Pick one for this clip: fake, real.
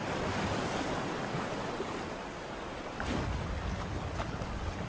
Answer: real